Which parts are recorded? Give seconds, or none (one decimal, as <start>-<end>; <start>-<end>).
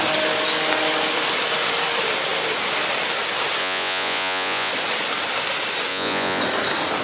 0.0-3.6; 4.7-5.9; 6.4-7.0